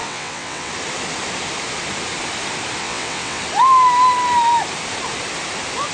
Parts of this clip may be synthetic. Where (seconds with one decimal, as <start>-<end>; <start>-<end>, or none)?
0.0-0.7; 2.8-3.4